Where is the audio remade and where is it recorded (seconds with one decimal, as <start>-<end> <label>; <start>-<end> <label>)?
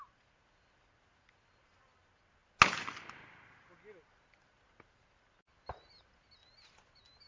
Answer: 0.0-7.3 recorded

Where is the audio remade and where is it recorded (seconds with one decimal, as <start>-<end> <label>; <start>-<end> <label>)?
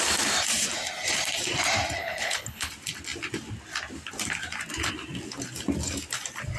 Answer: 0.0-2.0 recorded; 2.0-2.7 remade; 2.7-6.6 recorded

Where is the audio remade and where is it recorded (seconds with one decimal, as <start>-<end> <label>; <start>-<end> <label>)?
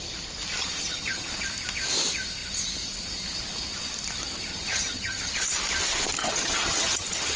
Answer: 0.0-0.6 recorded; 0.6-1.3 remade; 1.3-4.5 recorded; 4.5-5.3 remade; 5.3-6.2 recorded; 6.2-7.4 remade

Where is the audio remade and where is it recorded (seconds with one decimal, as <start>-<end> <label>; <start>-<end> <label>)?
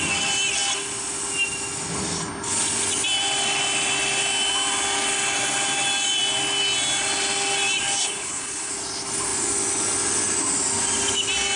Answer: 0.0-8.0 recorded; 8.0-8.7 remade; 8.7-11.6 recorded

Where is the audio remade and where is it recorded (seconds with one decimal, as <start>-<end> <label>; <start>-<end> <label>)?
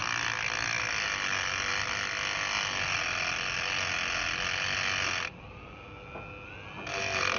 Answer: 0.0-1.7 remade; 1.7-7.4 recorded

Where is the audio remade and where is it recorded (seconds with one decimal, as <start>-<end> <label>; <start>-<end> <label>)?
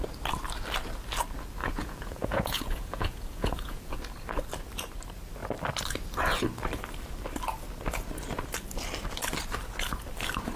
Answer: 0.0-1.6 recorded; 1.6-4.0 remade; 4.0-10.6 recorded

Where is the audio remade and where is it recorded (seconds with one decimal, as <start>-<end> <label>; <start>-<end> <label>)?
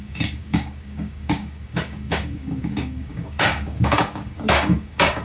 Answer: 0.0-5.2 remade